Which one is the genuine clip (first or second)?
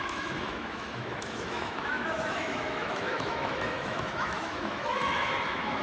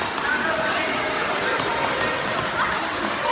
second